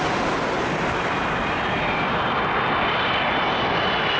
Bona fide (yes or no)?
no